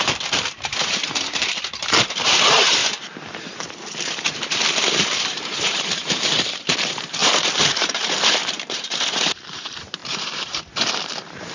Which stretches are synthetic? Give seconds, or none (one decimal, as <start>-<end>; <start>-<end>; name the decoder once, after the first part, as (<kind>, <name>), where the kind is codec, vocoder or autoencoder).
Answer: 0.0-2.8 (vocoder, BigVGAN v2); 4.3-11.5